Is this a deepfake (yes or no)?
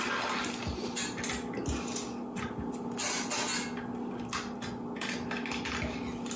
no